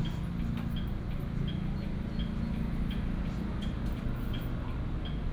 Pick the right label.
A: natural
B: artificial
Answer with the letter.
A